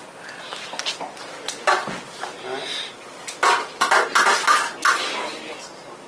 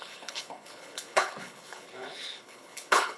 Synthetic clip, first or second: second